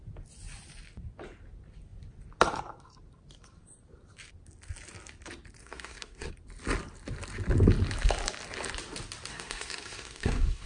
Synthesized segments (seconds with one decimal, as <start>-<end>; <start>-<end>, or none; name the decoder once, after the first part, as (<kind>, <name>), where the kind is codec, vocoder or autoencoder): 5.6-6.3 (codec, SNAC); 9.3-10.7